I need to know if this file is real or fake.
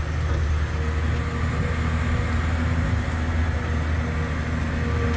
real